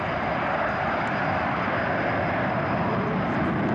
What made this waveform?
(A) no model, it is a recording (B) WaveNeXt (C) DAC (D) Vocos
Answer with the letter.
A